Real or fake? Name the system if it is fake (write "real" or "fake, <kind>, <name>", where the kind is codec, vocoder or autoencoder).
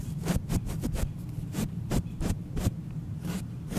fake, vocoder, BigVGAN v2